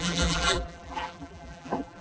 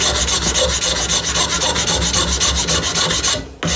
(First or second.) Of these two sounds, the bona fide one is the second